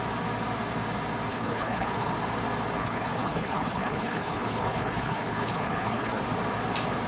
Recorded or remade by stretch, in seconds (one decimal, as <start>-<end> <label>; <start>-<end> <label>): 0.0-1.3 recorded; 1.3-2.1 remade; 2.1-2.8 recorded; 2.8-6.2 remade; 6.2-7.1 recorded